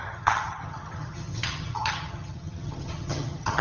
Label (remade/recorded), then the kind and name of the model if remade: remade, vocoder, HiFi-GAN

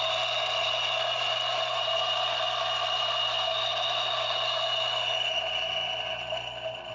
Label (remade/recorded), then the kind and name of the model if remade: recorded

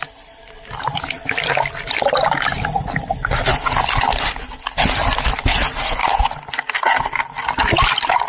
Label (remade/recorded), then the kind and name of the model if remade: recorded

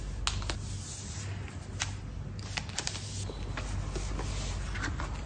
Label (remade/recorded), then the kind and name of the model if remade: recorded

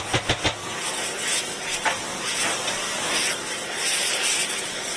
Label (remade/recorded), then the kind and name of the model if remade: recorded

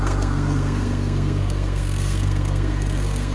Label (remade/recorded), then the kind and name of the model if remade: remade, codec, SNAC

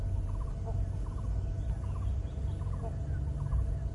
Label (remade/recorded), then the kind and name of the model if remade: recorded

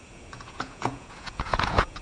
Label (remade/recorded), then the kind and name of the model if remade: remade, vocoder, Vocos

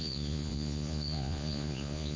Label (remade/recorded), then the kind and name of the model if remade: remade, vocoder, Vocos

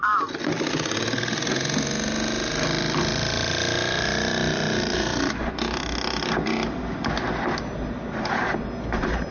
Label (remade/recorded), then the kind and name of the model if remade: recorded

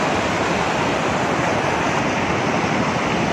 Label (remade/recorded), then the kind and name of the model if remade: recorded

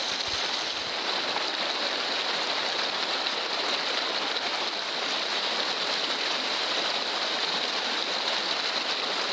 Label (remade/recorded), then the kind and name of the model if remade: recorded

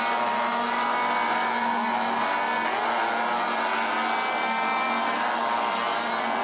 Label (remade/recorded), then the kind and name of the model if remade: recorded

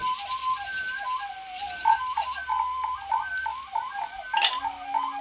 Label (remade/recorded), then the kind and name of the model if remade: recorded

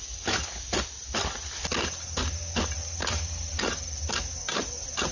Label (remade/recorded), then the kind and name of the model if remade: recorded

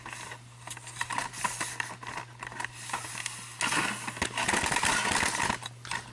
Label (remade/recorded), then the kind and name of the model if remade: recorded